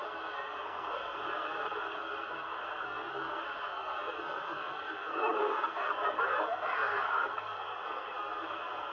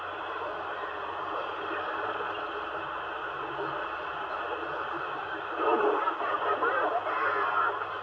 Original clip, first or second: second